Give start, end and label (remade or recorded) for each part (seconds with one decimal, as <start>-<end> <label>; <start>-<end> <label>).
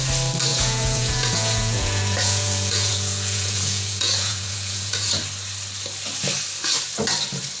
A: 0.0-0.5 recorded; 0.5-5.1 remade; 5.1-7.6 recorded